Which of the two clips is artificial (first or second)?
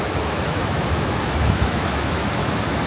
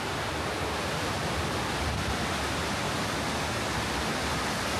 first